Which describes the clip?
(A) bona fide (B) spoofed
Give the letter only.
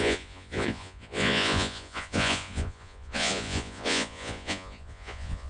B